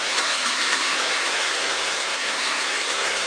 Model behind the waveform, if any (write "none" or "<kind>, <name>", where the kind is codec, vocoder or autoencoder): codec, SNAC